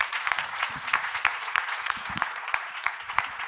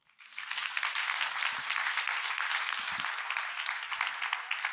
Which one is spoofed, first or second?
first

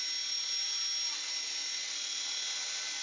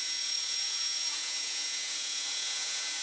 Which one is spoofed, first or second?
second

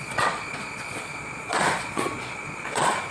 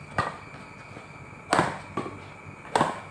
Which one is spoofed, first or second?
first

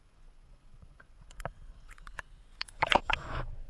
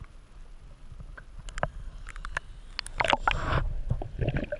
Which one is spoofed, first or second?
first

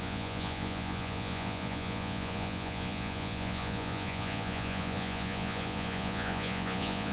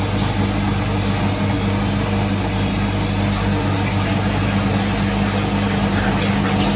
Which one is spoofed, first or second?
first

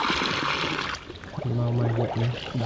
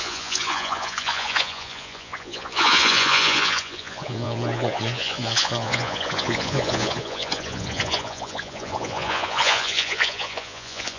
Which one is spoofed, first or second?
second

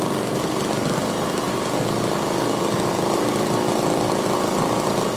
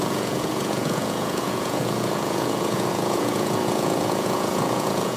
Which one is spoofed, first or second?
second